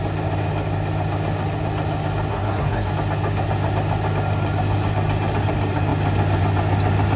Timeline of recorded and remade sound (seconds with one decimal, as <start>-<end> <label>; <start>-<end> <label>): 0.0-2.3 recorded; 2.3-2.9 remade; 2.9-7.2 recorded